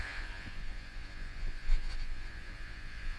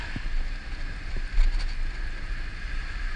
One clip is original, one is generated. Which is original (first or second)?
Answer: second